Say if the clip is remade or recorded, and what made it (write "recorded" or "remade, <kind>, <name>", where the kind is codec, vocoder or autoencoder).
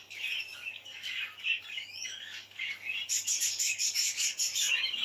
remade, codec, DAC